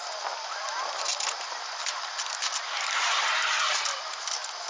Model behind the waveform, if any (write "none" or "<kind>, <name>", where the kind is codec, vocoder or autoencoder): none